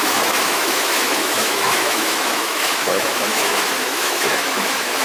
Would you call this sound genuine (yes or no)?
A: no